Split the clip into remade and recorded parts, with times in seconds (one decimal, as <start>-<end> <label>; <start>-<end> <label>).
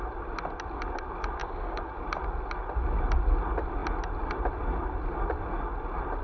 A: 0.0-1.4 recorded; 1.4-1.9 remade; 1.9-6.2 recorded